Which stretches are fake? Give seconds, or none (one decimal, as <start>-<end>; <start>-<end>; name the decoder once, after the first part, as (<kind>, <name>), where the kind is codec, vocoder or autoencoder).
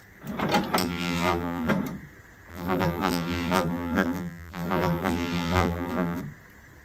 0.8-1.7 (vocoder, BigVGAN v2); 2.5-6.2